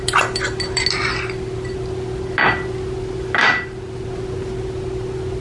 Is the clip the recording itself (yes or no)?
yes